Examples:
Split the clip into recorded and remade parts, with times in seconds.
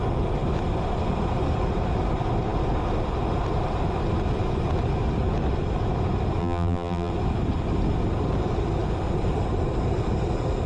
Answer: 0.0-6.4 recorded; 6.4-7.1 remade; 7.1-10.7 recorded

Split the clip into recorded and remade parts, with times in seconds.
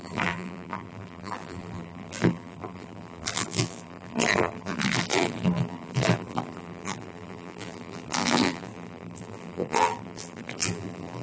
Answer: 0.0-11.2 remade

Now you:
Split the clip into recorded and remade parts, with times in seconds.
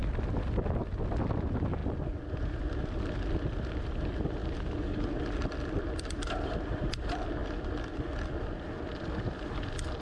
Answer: 0.0-10.0 recorded